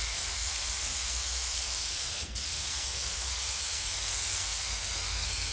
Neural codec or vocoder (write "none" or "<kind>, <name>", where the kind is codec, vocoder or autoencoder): codec, SNAC